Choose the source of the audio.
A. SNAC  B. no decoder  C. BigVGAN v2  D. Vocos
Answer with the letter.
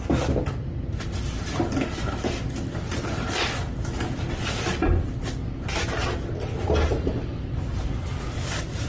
B